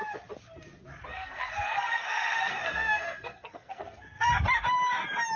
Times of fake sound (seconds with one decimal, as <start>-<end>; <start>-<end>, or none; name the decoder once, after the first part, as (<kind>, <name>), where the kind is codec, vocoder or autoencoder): 1.1-4.3 (codec, SNAC)

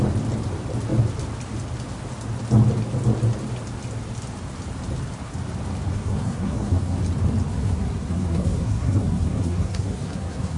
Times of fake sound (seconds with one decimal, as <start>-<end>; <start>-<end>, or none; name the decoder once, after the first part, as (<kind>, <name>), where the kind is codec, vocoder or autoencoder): 5.9-7.0 (codec, SNAC); 7.5-10.6